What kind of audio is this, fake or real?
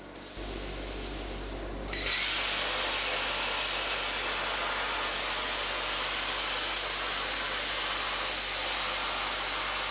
real